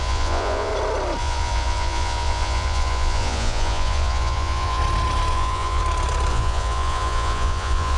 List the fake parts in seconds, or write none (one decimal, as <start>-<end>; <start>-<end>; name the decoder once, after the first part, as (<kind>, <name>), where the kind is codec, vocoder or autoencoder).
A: 0.0-0.7 (vocoder, Vocos); 1.2-4.8; 5.3-5.8; 6.3-8.0